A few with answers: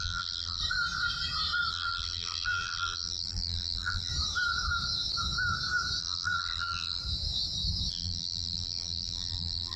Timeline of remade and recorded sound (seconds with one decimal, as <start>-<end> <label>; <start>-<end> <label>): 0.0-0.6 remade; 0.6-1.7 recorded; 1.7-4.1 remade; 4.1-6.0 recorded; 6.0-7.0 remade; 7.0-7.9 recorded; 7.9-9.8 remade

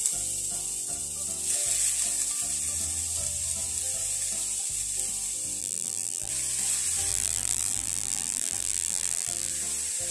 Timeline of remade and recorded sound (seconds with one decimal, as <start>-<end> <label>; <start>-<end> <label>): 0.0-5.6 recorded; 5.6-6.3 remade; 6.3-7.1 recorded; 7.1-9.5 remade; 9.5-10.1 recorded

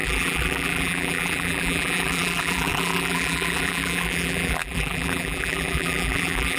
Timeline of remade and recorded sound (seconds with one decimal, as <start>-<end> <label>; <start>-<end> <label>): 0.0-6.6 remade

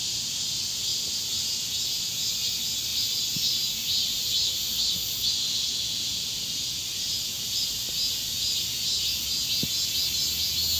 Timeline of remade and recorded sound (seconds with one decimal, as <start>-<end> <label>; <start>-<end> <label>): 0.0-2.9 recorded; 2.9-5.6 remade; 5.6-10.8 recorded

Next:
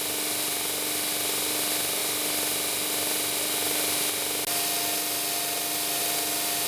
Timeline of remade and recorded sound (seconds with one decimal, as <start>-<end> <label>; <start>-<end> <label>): 0.0-6.7 recorded

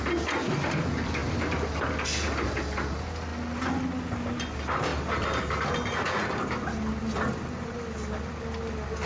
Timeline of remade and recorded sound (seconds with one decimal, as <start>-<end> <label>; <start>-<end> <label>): 0.0-9.1 recorded

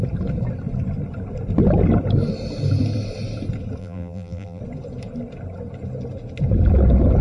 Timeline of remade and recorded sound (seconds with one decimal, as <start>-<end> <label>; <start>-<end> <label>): 0.0-3.8 recorded; 3.8-4.6 remade; 4.6-7.2 recorded

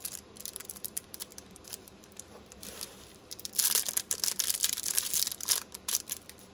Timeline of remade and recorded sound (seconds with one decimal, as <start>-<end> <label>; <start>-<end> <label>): 0.0-6.5 remade